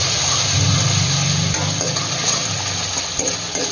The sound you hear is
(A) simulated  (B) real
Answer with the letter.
B